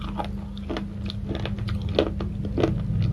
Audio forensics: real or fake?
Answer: real